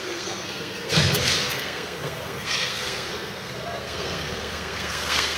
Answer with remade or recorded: remade